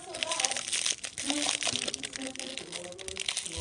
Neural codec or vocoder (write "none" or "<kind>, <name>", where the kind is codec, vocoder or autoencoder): none